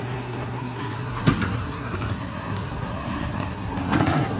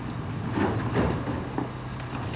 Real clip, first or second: second